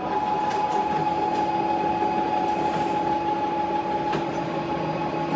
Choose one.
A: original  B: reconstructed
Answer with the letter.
A